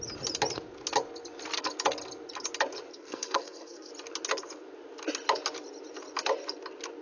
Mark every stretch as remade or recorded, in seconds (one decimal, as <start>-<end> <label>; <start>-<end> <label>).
0.0-2.9 recorded; 2.9-3.9 remade; 3.9-7.0 recorded